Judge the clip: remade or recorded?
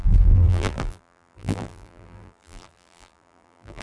remade